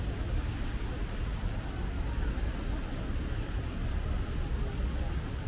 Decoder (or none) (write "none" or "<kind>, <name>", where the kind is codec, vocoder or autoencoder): none